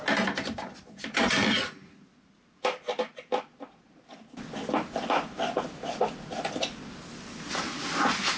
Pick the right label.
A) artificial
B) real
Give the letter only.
B